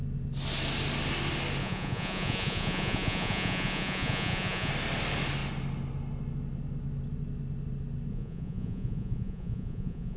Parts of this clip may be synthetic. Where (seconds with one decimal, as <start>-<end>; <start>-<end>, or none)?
1.6-4.7; 8.1-10.2